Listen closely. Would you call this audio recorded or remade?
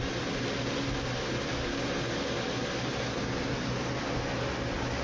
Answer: recorded